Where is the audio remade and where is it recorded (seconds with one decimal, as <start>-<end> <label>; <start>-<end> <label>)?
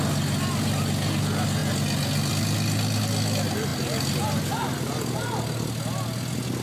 0.0-6.6 recorded